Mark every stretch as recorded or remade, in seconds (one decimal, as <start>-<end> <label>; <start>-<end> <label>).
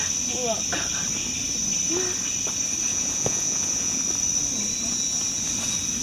0.0-2.9 recorded; 2.9-4.0 remade; 4.0-6.0 recorded